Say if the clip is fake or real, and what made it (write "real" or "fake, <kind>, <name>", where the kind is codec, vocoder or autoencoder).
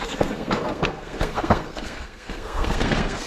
fake, codec, SNAC